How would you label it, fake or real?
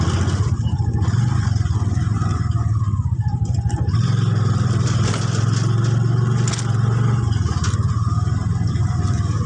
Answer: real